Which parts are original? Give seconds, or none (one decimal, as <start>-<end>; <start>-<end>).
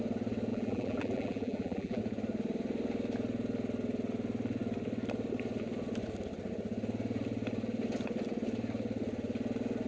0.0-0.5; 2.0-9.9